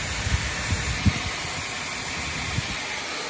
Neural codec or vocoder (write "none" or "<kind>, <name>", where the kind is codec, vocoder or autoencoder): none